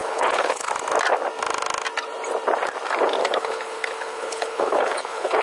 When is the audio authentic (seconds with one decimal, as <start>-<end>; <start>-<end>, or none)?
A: 0.7-3.2

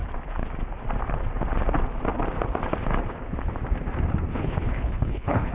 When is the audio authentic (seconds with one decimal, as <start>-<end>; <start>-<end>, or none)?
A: 0.0-4.3

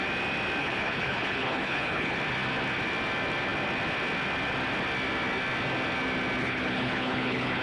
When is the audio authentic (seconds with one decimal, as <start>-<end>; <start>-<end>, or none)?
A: 0.0-0.6; 2.2-6.4